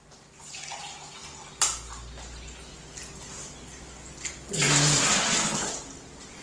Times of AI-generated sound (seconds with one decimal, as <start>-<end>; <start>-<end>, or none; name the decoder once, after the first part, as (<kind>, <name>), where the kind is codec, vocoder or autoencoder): none